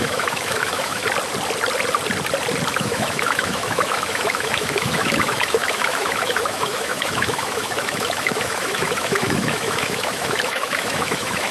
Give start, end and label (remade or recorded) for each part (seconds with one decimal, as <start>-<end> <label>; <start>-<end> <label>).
0.0-1.0 remade; 1.0-2.7 recorded; 2.7-11.5 remade